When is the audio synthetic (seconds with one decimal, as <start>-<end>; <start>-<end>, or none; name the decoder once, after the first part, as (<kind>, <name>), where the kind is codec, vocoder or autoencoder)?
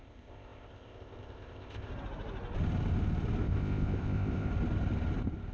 0.0-1.9 (codec, ZipCodec); 3.4-4.5